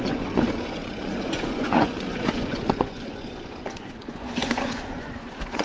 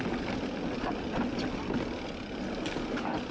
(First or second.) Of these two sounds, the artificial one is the first